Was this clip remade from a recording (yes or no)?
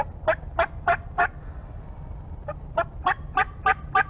no